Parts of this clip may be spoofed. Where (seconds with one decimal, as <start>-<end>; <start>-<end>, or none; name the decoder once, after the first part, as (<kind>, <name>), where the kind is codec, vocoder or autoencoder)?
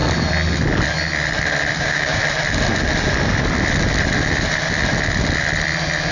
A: 1.8-2.2 (codec, DAC)